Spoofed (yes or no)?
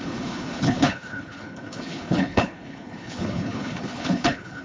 yes